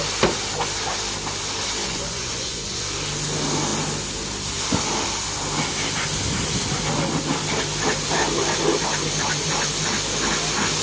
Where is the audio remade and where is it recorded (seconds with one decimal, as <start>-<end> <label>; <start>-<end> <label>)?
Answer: 0.0-1.8 recorded; 1.8-2.8 remade; 2.8-10.8 recorded